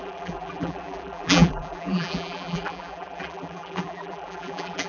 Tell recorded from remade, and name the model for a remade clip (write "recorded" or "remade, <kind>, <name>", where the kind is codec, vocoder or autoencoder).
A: remade, vocoder, BigVGAN v2